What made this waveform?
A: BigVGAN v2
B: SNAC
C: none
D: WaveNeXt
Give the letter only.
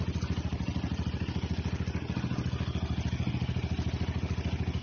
C